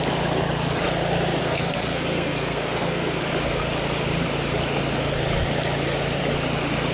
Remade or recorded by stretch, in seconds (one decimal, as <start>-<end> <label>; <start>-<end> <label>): 0.0-1.4 recorded; 1.4-3.2 remade; 3.2-6.9 recorded